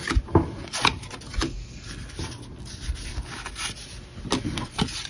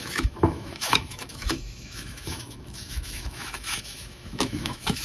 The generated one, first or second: second